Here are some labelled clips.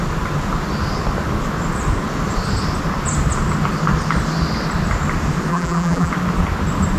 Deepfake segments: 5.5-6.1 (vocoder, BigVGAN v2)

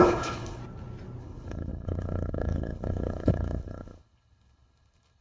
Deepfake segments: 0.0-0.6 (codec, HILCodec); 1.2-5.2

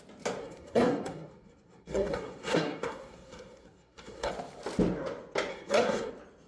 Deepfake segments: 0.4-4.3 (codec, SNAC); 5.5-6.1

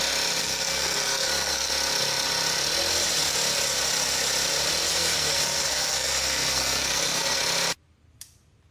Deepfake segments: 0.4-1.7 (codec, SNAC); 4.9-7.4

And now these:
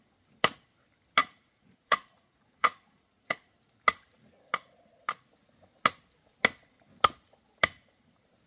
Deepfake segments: 1.2-3.5 (vocoder, Vocos)